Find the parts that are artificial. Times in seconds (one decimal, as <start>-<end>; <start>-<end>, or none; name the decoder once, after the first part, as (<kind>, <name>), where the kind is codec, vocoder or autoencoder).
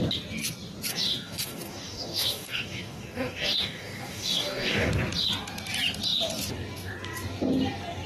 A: 0.9-4.9 (codec, DAC)